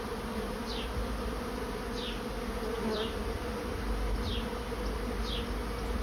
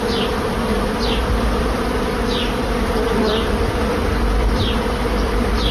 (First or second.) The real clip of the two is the first